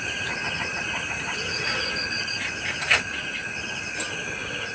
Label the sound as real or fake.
real